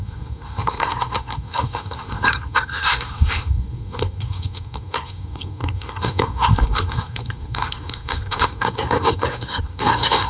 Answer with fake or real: fake